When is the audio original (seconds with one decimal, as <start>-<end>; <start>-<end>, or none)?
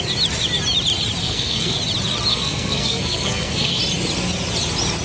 0.0-1.2; 1.8-2.3; 3.8-5.0